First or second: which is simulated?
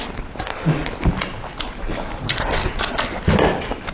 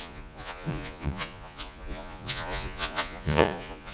second